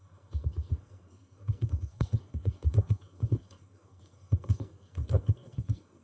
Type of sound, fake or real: fake